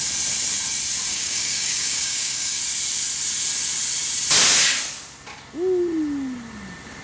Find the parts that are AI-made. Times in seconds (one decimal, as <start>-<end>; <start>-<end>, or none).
1.1-2.6